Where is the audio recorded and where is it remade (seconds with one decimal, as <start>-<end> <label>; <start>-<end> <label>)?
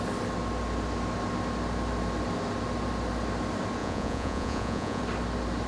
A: 0.0-3.8 recorded; 3.8-5.0 remade; 5.0-5.7 recorded